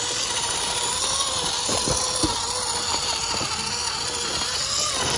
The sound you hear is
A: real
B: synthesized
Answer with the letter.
A